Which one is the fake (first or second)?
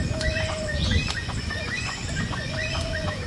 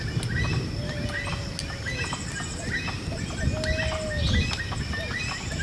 first